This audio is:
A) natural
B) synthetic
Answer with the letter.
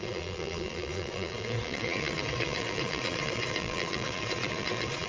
B